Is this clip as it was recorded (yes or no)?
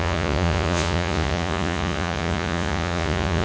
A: no